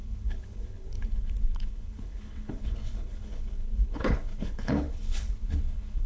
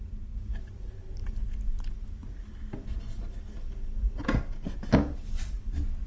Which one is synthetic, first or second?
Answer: first